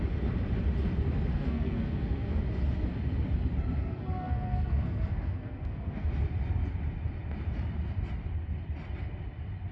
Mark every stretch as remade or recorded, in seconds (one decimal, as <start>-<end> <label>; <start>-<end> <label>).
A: 0.0-1.3 recorded; 1.3-2.4 remade; 2.4-3.8 recorded; 3.8-6.1 remade; 6.1-9.7 recorded